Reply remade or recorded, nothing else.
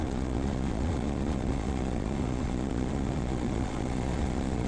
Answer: remade